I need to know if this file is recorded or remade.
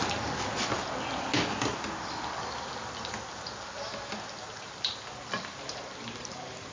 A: recorded